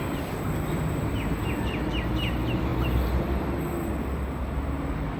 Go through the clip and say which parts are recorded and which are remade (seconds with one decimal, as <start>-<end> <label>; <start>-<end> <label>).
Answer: 0.0-5.2 recorded